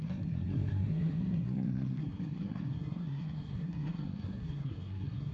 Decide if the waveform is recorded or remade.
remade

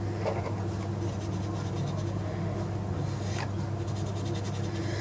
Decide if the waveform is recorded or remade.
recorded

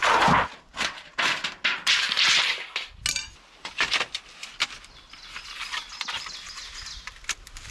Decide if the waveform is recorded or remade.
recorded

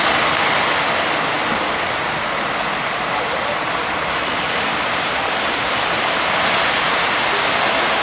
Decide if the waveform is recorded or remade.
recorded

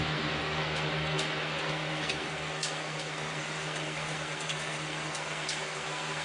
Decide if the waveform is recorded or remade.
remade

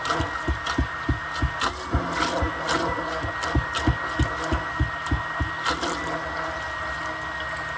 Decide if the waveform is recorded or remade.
recorded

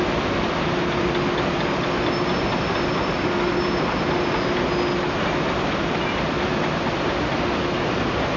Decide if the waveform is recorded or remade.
recorded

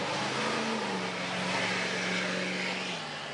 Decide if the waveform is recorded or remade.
recorded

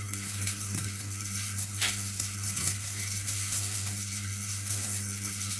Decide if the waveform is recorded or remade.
remade